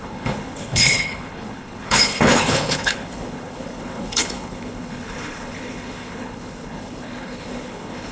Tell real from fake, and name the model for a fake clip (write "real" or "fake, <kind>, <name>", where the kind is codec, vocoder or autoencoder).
fake, codec, HILCodec